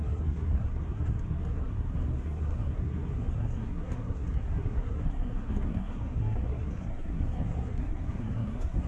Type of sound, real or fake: fake